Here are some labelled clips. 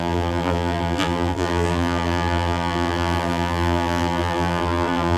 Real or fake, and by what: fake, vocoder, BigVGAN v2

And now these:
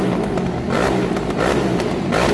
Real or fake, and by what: real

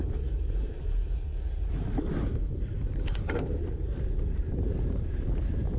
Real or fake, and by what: fake, vocoder, BigVGAN v2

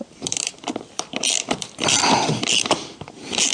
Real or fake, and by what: fake, vocoder, BigVGAN v2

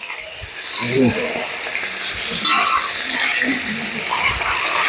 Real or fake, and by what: real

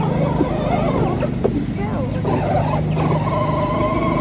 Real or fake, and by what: real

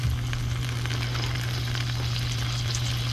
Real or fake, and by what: real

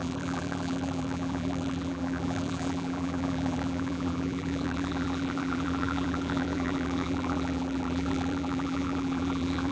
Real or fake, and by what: fake, vocoder, BigVGAN v2